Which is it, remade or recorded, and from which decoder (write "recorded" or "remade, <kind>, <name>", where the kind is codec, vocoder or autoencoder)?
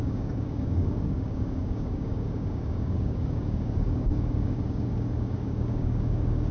remade, codec, DAC